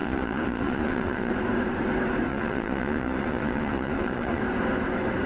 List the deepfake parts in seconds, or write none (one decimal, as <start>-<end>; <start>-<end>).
0.0-1.3; 2.3-4.4